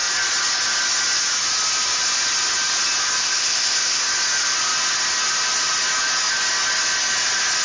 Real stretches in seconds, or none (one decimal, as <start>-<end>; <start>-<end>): 0.0-3.2; 4.0-7.6